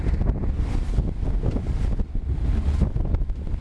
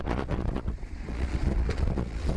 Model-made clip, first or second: second